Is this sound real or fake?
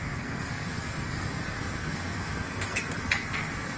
fake